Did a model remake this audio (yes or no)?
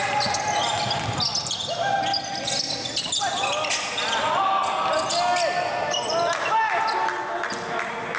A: no